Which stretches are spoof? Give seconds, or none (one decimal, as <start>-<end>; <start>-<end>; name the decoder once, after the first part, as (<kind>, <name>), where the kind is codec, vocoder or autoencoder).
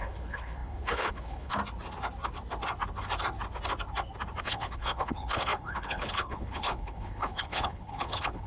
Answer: 0.0-1.6 (codec, HILCodec); 4.4-8.5